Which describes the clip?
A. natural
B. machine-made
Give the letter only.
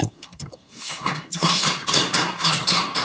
B